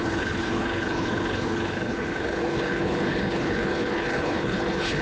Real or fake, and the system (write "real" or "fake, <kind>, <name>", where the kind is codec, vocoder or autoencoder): fake, codec, HILCodec